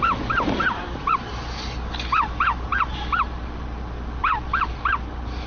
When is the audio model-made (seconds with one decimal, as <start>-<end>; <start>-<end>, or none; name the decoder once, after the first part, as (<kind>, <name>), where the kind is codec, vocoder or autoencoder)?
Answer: none